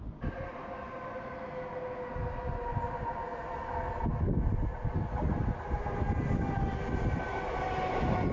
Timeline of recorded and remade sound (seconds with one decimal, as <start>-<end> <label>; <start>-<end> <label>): 0.0-8.3 recorded